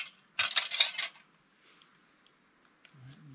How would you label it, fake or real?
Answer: real